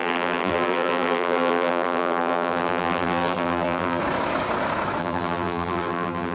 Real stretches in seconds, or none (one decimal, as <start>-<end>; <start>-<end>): 4.0-5.0